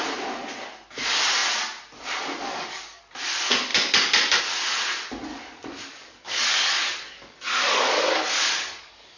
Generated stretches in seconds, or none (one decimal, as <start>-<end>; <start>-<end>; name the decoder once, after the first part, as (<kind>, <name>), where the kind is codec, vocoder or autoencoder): 2.4-3.0 (codec, DAC); 5.3-9.2